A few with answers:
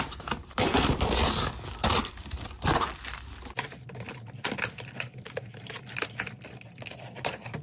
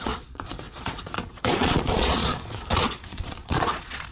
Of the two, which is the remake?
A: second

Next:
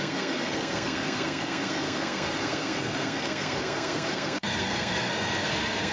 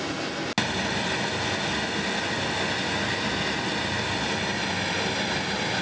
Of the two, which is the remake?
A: first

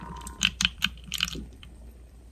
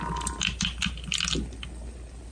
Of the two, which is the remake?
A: first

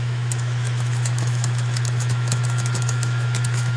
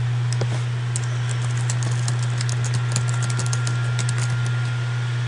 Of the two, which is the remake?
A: first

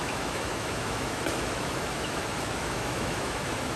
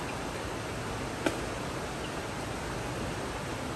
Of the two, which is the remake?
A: first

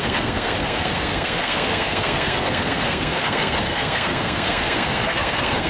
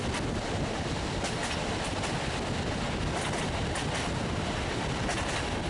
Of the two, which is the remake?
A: first